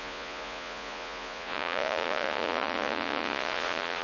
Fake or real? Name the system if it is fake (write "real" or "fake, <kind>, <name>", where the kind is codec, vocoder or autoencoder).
fake, vocoder, Vocos